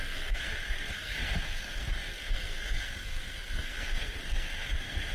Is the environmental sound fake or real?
fake